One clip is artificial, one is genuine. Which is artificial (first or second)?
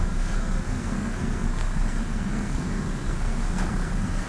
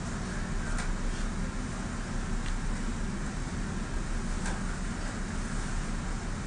first